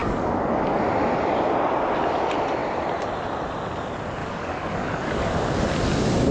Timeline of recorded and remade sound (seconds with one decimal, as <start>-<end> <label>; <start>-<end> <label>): 0.0-0.8 remade; 0.8-4.2 recorded; 4.2-5.5 remade; 5.5-6.3 recorded